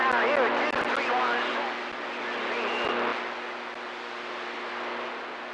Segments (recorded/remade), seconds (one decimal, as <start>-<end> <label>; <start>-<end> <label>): 0.0-5.5 recorded